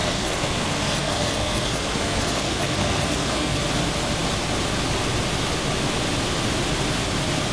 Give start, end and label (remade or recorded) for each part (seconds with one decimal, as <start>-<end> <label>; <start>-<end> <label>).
0.0-3.6 remade; 3.6-7.5 recorded